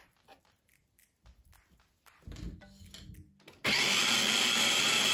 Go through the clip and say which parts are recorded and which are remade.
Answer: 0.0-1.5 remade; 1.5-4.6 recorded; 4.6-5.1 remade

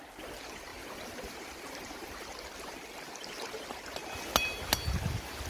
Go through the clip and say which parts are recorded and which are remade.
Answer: 0.0-0.7 recorded; 0.7-3.1 remade; 3.1-5.5 recorded

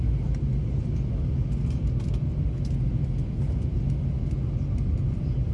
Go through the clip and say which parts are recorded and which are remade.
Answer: 0.0-2.2 recorded; 2.2-2.9 remade; 2.9-5.5 recorded

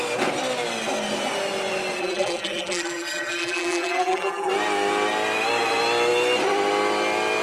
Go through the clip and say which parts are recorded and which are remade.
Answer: 0.0-2.0 recorded; 2.0-4.5 remade; 4.5-7.4 recorded

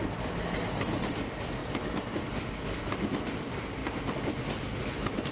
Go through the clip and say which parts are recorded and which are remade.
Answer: 0.0-5.3 recorded

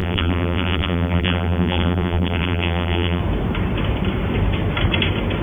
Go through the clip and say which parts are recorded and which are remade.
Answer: 0.0-3.2 remade; 3.2-5.4 recorded

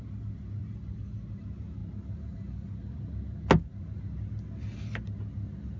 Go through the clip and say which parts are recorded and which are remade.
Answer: 0.0-5.8 recorded